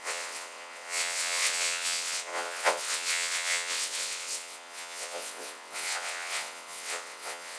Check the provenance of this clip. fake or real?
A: fake